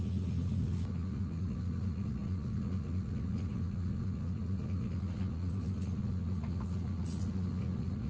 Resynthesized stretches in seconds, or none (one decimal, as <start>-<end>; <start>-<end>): 0.0-8.1